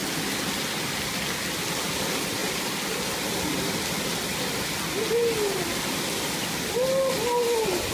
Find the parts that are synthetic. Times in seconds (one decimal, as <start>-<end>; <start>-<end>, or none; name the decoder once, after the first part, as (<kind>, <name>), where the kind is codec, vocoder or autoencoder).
none